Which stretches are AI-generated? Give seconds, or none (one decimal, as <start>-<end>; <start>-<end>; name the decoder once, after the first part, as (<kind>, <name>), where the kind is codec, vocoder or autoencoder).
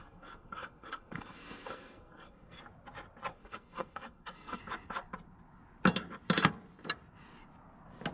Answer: 0.0-2.6 (codec, SNAC); 3.3-4.6